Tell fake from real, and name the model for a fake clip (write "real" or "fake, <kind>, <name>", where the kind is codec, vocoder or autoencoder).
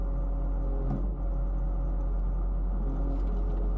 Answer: real